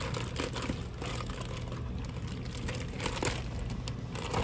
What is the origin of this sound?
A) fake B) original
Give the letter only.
B